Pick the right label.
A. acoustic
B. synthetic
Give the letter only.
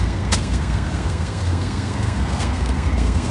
B